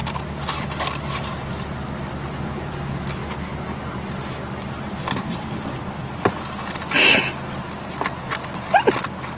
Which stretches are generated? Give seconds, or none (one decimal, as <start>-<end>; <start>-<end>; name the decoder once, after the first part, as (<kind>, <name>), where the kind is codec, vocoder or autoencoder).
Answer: 0.0-1.5 (vocoder, BigVGAN v2)